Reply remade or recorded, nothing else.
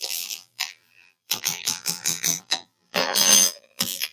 remade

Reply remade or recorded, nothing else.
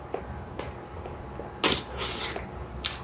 recorded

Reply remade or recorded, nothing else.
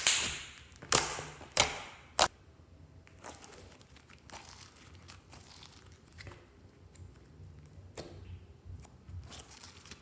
recorded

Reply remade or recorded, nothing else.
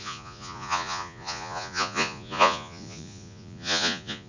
remade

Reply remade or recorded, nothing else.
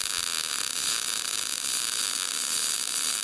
recorded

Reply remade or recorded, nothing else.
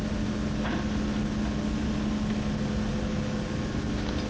recorded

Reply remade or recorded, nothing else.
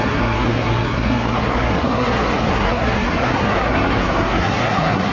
remade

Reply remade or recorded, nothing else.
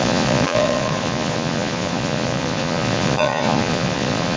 remade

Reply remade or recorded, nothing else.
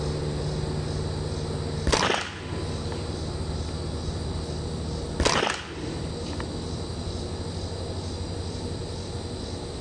recorded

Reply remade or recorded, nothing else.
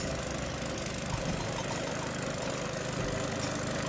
recorded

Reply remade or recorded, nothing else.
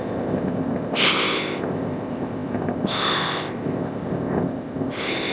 remade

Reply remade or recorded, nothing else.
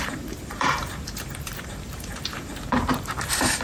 remade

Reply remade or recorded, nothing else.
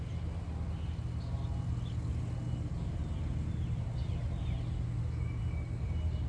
recorded